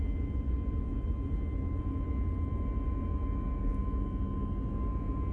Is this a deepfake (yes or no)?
no